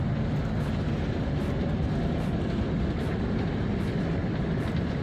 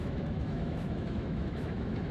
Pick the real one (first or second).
first